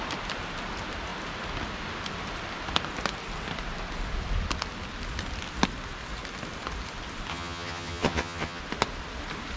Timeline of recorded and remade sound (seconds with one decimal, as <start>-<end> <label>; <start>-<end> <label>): 0.0-7.3 recorded; 7.3-8.6 remade; 8.6-9.6 recorded